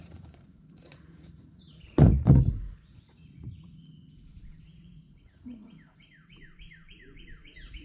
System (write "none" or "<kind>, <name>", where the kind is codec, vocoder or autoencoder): vocoder, Vocos